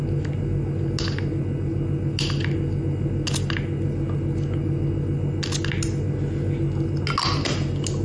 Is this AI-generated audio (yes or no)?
no